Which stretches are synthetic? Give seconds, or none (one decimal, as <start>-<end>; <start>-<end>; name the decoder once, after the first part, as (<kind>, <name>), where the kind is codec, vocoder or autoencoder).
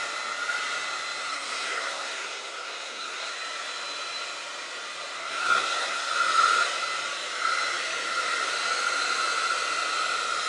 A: 1.3-3.3 (codec, SNAC); 5.2-6.1